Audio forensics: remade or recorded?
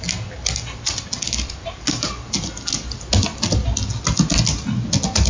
recorded